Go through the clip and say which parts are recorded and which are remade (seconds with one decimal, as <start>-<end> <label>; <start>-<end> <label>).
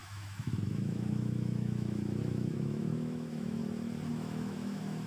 0.0-3.6 remade; 3.6-4.1 recorded; 4.1-5.1 remade